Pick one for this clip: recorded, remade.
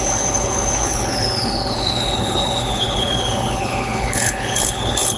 remade